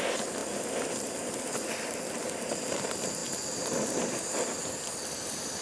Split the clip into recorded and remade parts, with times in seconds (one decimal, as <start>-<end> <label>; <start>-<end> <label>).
0.0-5.6 recorded